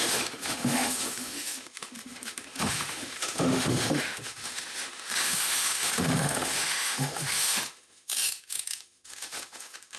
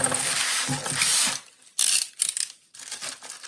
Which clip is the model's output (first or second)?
first